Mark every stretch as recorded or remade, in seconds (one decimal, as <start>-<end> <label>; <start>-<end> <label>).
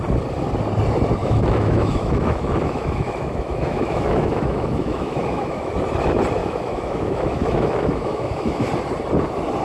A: 0.0-1.2 recorded; 1.2-5.7 remade; 5.7-6.4 recorded; 6.4-8.7 remade; 8.7-9.6 recorded